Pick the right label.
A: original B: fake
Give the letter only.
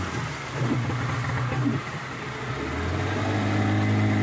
A